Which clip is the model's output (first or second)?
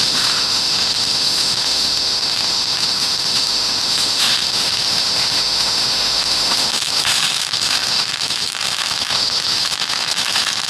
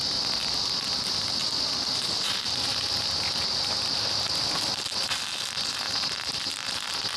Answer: first